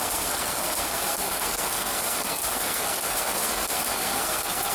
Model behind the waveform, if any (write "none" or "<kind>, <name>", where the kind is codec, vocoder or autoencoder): codec, SNAC